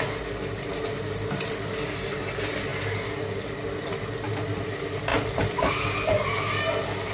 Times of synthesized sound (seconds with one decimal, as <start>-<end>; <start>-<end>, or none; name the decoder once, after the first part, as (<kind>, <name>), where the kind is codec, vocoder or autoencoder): 5.1-5.7 (vocoder, BigVGAN v2)